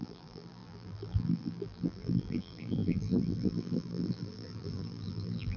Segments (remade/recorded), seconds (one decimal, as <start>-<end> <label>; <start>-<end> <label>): 0.0-5.6 remade